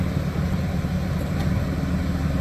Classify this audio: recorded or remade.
recorded